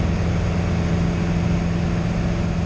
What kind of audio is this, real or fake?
real